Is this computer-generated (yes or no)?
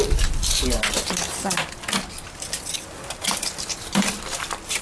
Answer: no